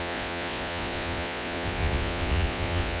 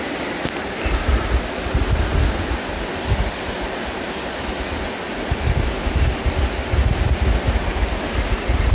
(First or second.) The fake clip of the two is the first